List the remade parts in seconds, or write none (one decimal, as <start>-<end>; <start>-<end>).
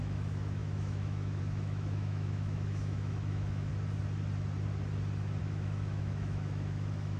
0.0-3.7; 5.4-7.2